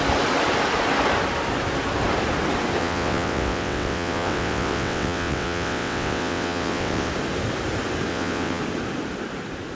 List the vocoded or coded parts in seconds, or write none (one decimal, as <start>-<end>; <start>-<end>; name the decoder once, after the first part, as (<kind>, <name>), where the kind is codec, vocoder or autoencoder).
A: 2.8-7.1 (vocoder, WaveNeXt); 8.1-8.6

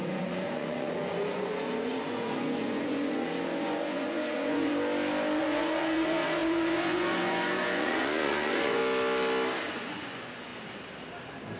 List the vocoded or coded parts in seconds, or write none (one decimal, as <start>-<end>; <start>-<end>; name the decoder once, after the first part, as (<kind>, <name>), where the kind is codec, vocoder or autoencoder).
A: 0.0-4.7 (vocoder, Vocos); 5.4-8.8; 9.7-10.5

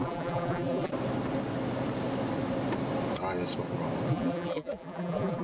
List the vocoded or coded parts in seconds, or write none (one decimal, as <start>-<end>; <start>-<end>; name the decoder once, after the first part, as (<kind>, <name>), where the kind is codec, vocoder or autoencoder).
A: 0.0-0.9 (vocoder, BigVGAN v2); 4.1-5.4